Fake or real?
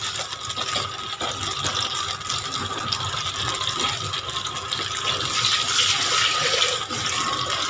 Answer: real